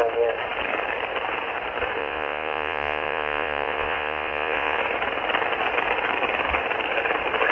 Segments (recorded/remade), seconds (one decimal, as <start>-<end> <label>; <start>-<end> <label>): 0.0-2.0 recorded; 2.0-4.8 remade; 4.8-7.5 recorded